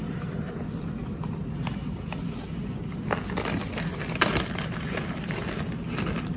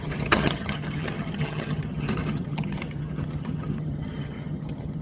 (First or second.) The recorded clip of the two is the first